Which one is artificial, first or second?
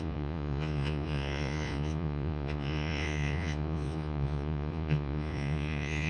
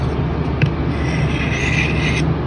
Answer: first